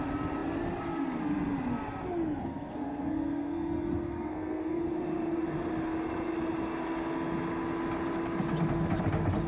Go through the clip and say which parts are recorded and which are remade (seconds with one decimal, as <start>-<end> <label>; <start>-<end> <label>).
0.0-2.4 recorded; 2.4-4.8 remade; 4.8-9.5 recorded